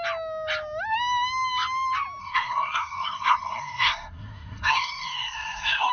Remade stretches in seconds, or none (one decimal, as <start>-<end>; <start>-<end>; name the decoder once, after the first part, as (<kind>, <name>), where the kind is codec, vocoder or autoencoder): 2.2-5.9 (codec, SNAC)

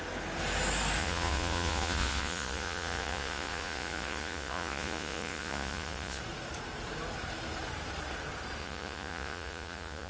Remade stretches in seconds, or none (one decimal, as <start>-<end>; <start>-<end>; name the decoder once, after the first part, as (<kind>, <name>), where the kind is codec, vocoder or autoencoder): 1.0-6.2 (vocoder, Vocos); 8.6-10.1

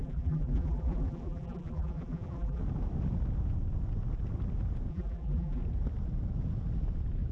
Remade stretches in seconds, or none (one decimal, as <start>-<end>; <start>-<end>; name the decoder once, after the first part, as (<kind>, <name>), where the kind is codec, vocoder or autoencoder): 0.0-2.6 (vocoder, BigVGAN v2); 4.9-5.6

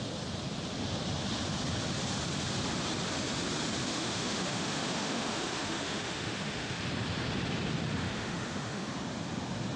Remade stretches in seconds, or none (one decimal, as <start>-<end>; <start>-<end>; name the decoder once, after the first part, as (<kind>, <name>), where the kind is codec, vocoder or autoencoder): 3.9-6.8 (autoencoder, DAC-VAE); 8.0-8.9

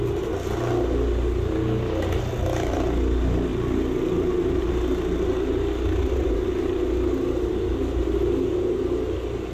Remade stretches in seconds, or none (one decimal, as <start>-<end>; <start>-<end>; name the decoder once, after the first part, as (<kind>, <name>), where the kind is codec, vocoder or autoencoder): 3.5-4.7 (vocoder, BigVGAN v2)

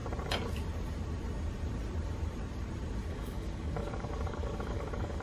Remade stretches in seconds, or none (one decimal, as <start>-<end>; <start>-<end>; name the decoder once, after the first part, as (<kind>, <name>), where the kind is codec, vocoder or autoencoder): 3.1-5.2 (codec, DAC)

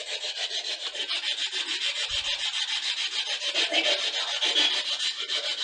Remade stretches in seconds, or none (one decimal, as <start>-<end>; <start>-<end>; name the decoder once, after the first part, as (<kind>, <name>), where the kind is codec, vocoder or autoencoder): none